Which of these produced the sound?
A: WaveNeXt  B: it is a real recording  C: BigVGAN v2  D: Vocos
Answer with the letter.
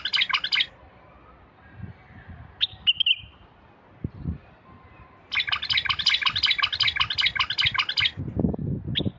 B